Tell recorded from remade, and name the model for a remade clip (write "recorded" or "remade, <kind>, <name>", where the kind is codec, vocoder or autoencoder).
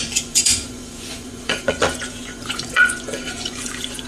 remade, vocoder, Vocos